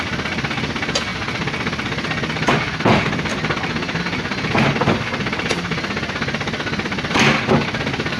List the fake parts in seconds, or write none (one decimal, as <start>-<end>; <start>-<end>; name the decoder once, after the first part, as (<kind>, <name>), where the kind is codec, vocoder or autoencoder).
none

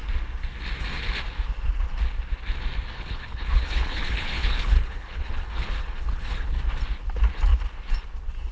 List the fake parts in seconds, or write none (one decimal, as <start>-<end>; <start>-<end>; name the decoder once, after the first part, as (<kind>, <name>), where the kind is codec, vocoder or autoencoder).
2.9-6.6 (codec, HILCodec)

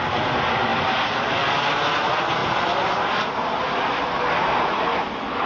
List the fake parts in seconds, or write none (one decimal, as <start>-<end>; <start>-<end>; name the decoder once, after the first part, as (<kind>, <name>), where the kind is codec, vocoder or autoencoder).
4.9-5.5 (vocoder, BigVGAN v2)

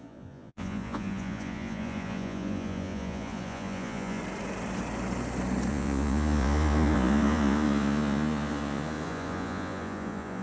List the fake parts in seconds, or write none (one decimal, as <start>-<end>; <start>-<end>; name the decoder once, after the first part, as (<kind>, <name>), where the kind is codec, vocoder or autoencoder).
0.0-4.2 (vocoder, Vocos); 5.7-10.4

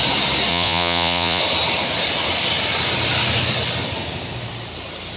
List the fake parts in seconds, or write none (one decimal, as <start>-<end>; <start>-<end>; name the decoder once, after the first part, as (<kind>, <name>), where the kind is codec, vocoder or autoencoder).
0.5-1.4 (vocoder, Vocos)

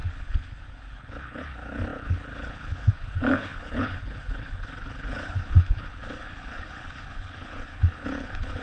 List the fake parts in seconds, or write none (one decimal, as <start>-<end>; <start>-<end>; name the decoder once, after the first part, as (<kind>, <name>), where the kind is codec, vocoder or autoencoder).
0.0-8.6 (codec, HILCodec)